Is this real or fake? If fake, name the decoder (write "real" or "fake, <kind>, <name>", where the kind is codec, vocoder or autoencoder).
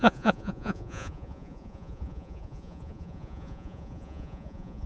fake, vocoder, Vocos